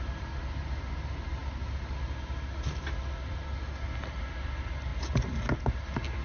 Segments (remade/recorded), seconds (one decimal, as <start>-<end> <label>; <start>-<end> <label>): 0.0-6.2 recorded